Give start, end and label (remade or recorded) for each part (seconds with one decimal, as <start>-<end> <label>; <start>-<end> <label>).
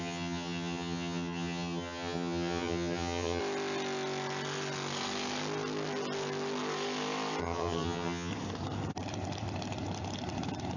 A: 0.0-3.4 remade; 3.4-7.4 recorded; 7.4-8.3 remade; 8.3-10.8 recorded